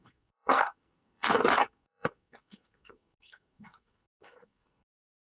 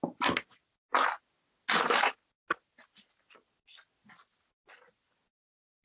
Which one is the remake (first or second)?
first